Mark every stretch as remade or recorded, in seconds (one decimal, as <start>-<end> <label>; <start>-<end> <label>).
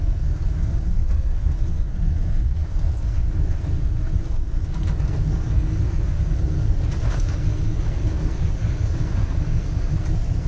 0.0-10.5 remade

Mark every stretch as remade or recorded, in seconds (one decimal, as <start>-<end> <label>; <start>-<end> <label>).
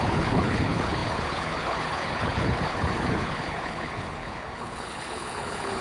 0.0-5.8 remade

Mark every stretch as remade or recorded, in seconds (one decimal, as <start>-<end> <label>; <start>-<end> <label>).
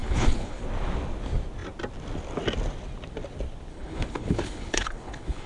0.0-0.6 remade; 0.6-3.7 recorded; 3.7-5.5 remade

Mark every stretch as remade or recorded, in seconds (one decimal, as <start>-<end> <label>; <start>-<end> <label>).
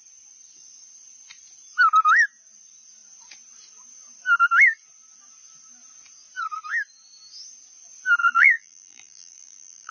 0.0-8.2 recorded; 8.2-9.9 remade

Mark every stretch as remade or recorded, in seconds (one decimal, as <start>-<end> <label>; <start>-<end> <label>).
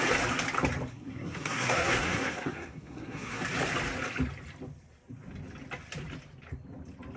0.0-0.9 recorded; 0.9-3.4 remade; 3.4-7.2 recorded